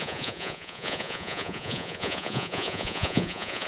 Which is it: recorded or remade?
remade